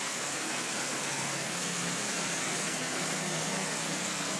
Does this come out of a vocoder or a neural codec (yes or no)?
yes